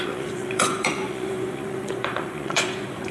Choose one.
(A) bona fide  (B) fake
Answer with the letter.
B